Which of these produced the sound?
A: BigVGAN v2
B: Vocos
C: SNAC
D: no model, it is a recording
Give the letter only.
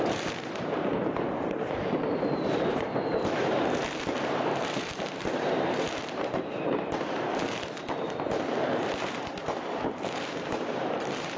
A